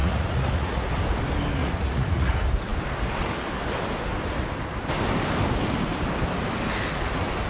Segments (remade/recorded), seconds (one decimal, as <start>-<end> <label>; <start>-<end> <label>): 0.0-0.9 remade; 0.9-1.6 recorded; 1.6-2.3 remade; 2.3-7.5 recorded